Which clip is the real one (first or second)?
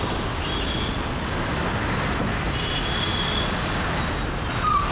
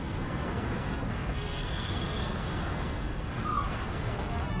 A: first